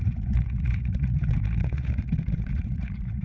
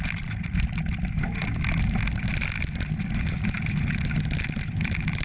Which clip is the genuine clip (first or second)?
second